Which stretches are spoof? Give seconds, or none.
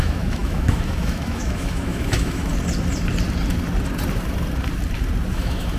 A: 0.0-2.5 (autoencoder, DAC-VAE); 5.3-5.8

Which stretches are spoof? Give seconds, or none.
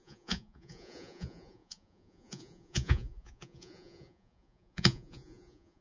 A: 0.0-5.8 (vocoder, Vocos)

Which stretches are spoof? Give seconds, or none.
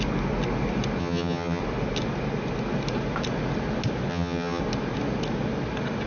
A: 1.0-1.6 (vocoder, HiFi-GAN); 4.1-4.6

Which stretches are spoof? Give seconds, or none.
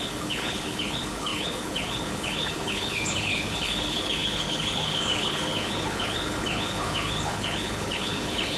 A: 0.0-8.6 (codec, HILCodec)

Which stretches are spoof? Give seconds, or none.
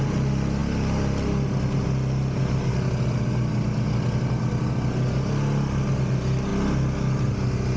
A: none